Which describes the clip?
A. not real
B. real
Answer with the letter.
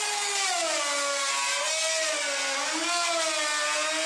B